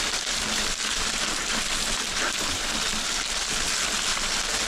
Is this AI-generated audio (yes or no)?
no